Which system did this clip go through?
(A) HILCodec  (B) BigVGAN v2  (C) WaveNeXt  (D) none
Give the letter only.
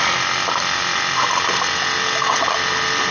D